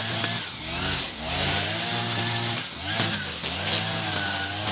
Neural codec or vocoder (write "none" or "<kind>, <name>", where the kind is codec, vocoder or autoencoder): none